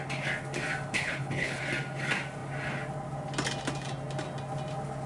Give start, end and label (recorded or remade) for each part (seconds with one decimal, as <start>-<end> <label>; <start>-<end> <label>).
0.0-0.9 recorded; 0.9-1.6 remade; 1.6-5.1 recorded

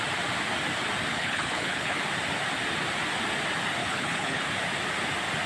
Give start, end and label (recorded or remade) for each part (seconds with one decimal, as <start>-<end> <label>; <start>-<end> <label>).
0.0-1.1 recorded; 1.1-2.0 remade; 2.0-3.8 recorded; 3.8-4.4 remade; 4.4-5.5 recorded

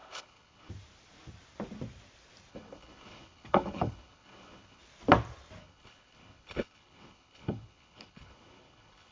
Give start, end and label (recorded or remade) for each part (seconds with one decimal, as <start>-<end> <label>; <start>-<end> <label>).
0.0-0.7 remade; 0.7-2.5 recorded; 2.5-4.8 remade; 4.8-5.6 recorded; 5.6-9.1 remade